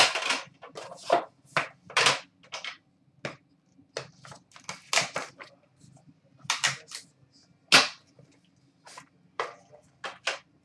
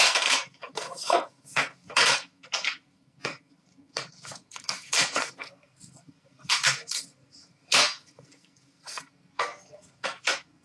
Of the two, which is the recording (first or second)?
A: first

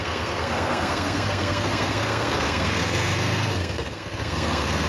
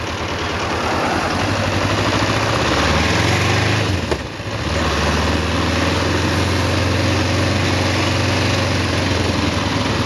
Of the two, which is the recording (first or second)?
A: second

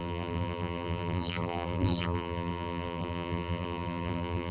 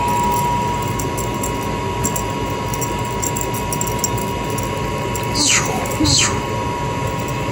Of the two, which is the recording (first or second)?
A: second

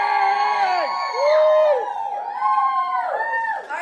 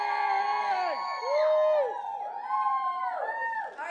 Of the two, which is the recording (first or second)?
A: second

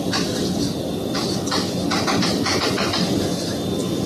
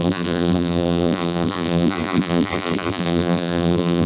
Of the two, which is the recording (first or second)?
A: first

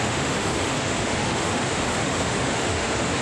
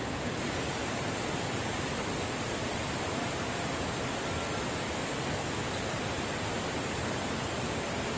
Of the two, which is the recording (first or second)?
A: second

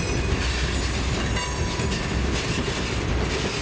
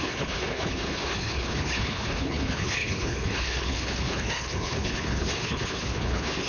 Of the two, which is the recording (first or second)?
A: first